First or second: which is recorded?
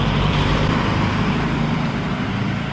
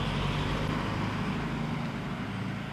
second